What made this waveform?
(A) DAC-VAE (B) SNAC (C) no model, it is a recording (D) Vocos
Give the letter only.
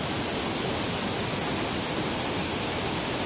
C